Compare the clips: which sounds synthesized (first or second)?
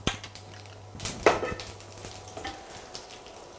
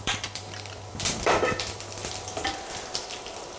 second